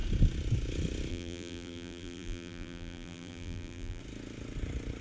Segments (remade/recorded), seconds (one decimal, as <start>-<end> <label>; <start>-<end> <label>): 0.0-1.1 recorded; 1.1-4.0 remade; 4.0-5.0 recorded